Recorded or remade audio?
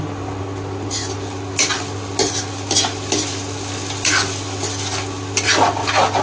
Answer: recorded